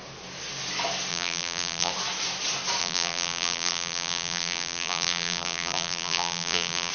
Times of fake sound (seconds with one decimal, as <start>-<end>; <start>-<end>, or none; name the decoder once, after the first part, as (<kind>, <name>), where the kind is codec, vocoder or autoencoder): 1.1-1.9 (vocoder, BigVGAN v2); 2.8-6.9